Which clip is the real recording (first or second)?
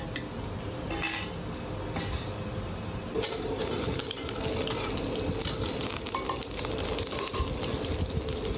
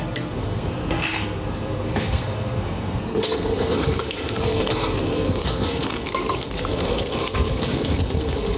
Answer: first